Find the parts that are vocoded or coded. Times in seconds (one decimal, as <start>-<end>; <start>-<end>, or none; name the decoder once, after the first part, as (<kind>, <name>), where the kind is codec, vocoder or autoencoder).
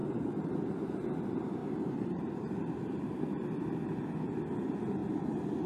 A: 0.0-0.5 (vocoder, BigVGAN v2); 1.6-4.0; 5.0-5.7